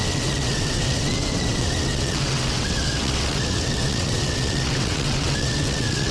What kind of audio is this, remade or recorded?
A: remade